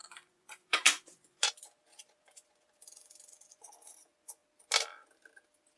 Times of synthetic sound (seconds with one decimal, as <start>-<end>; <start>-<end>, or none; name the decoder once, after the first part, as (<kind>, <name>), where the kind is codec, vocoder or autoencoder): 0.0-4.4 (vocoder, Vocos)